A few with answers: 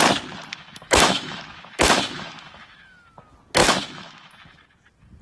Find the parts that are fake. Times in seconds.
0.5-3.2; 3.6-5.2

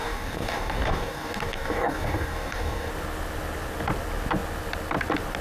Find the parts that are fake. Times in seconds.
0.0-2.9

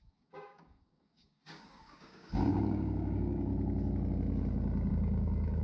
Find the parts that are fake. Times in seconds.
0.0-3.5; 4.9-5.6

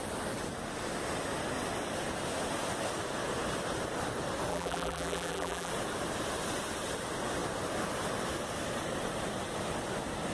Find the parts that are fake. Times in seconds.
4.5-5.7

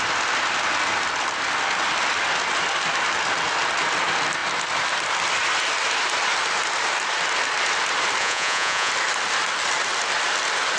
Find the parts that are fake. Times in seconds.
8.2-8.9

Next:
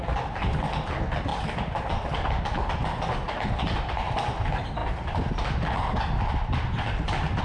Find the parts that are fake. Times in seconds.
none

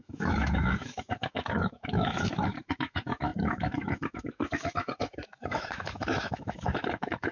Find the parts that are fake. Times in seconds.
0.0-7.3

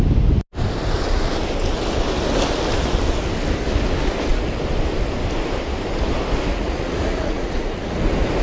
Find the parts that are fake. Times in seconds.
6.5-8.0